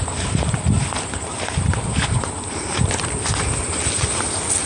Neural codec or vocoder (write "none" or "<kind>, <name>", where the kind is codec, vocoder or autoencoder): none